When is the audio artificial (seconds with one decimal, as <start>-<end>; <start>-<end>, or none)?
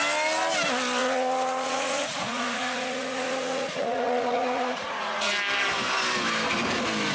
1.0-5.3